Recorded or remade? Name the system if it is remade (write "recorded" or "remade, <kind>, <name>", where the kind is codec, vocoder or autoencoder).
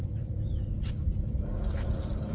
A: remade, vocoder, BigVGAN v2